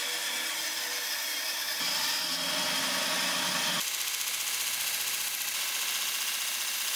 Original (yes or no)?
yes